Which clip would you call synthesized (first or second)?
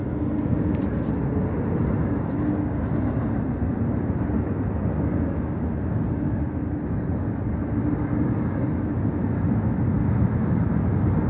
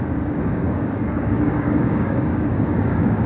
second